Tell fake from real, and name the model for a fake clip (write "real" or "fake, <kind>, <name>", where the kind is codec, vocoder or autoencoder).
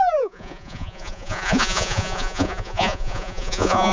fake, vocoder, Vocos